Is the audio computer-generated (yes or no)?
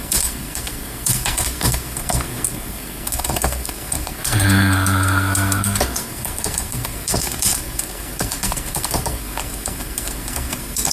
yes